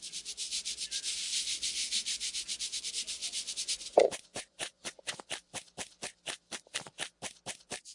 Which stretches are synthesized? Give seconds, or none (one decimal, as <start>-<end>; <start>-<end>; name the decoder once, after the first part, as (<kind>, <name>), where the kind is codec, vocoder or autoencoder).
3.2-5.2 (vocoder, Vocos)